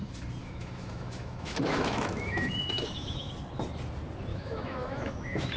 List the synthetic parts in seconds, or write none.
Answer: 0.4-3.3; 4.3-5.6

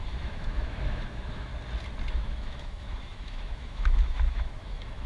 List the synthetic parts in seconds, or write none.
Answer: 0.0-1.5; 2.1-5.1

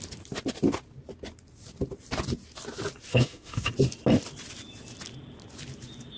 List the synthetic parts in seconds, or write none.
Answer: 3.1-3.7

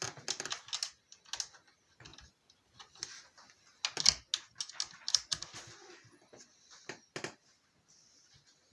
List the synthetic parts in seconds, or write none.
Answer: none

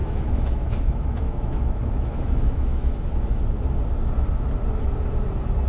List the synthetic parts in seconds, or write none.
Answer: 0.0-3.4

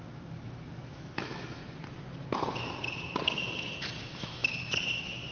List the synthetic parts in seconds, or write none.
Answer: 0.0-1.6; 4.0-5.3

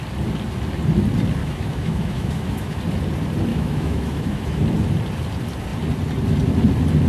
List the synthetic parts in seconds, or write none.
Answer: 1.4-2.8; 3.5-4.6

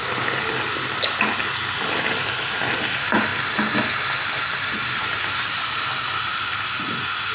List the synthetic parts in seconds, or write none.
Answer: none